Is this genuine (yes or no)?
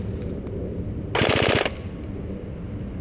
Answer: yes